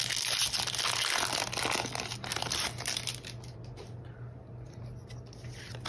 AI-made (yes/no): no